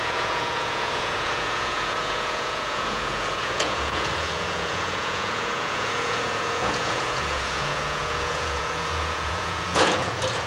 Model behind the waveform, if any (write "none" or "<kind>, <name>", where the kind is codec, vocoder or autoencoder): vocoder, Vocos